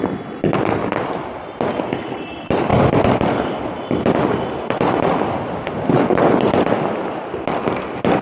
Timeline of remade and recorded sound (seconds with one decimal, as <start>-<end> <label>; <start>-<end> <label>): 0.0-2.7 recorded; 2.7-5.7 remade; 5.7-8.2 recorded